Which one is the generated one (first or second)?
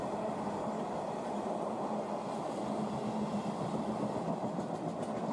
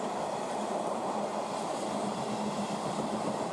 second